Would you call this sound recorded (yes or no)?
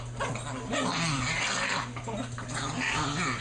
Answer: yes